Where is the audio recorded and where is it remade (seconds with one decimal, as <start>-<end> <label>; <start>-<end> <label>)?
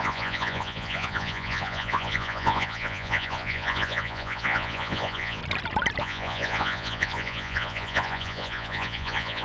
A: 0.0-5.4 remade; 5.4-6.0 recorded; 6.0-9.4 remade